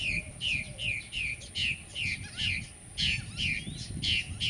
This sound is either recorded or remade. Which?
recorded